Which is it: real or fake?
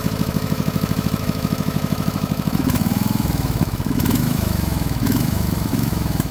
fake